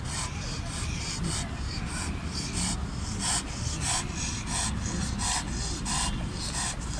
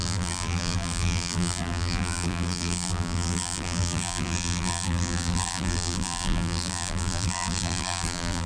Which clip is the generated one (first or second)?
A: second